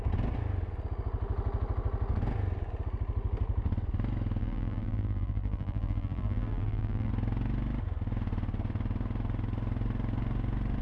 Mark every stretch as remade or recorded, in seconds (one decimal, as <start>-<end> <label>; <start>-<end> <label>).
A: 0.0-4.4 recorded; 4.4-7.1 remade; 7.1-10.8 recorded